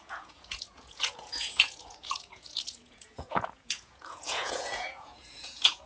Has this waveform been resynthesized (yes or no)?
yes